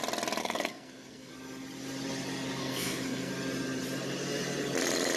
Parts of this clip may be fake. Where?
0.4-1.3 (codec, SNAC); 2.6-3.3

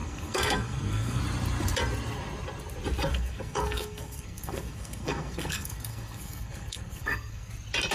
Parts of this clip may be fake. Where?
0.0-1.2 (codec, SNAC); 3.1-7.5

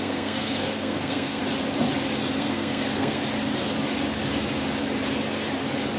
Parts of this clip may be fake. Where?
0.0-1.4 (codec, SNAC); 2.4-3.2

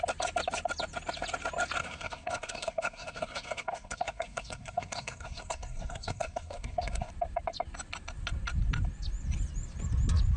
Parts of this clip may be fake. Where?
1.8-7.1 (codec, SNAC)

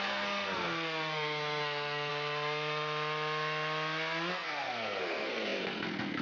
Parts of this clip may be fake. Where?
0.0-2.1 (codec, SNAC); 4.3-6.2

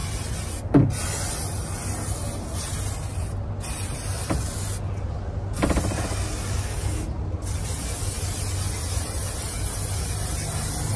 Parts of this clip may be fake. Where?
none

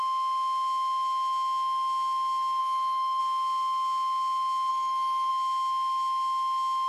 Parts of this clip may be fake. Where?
2.6-3.2 (codec, SNAC); 4.7-5.3

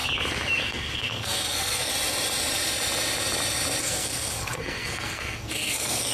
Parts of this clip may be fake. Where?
0.6-1.9 (codec, SNAC); 3.8-6.1